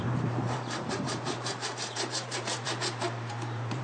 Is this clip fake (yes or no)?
yes